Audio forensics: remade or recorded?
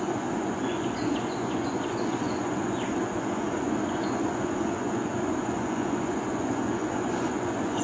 remade